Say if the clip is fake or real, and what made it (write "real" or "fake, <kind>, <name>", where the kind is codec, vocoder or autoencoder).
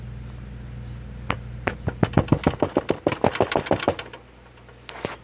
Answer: real